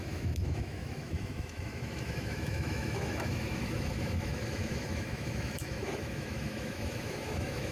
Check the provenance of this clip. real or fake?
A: fake